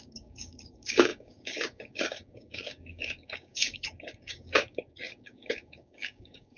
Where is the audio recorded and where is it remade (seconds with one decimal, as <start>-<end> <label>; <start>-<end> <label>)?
0.0-6.6 remade